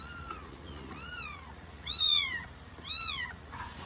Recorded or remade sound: remade